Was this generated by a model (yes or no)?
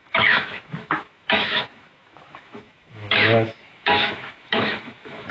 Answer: yes